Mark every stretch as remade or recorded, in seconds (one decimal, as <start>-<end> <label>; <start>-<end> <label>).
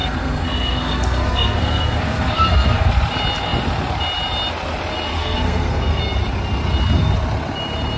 0.0-2.9 remade; 2.9-5.1 recorded; 5.1-6.0 remade; 6.0-8.0 recorded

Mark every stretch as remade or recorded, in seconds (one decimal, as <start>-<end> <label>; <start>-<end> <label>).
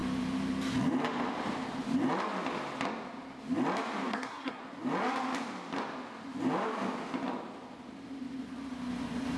0.0-4.1 recorded; 4.1-4.6 remade; 4.6-9.4 recorded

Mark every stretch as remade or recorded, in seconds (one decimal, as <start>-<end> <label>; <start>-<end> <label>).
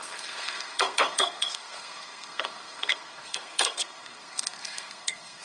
0.0-5.4 remade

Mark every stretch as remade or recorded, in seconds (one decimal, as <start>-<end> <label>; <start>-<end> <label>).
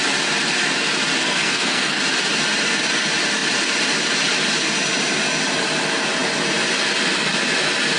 0.0-1.2 recorded; 1.2-2.0 remade; 2.0-8.0 recorded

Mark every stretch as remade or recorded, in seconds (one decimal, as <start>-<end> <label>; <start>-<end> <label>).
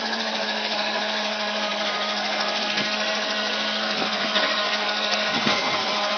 0.0-6.2 remade